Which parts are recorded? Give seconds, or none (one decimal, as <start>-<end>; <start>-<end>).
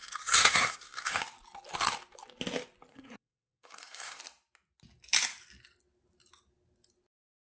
1.2-2.9; 4.2-7.5